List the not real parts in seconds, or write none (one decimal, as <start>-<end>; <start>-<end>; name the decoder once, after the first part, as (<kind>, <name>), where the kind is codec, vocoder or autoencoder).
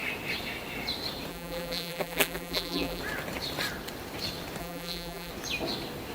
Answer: 1.3-3.0 (vocoder, BigVGAN v2); 4.6-5.3